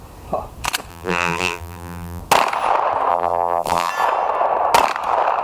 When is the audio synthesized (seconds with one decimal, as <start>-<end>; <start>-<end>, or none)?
0.9-2.2; 3.1-3.9